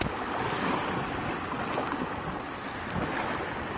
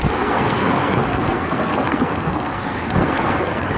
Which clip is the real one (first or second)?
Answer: first